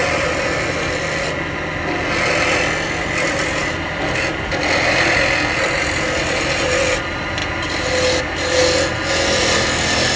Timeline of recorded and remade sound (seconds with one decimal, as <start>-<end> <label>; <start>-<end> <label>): 0.0-10.2 recorded